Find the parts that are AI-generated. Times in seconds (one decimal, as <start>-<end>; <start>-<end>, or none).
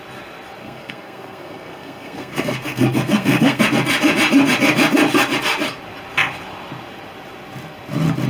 0.6-3.6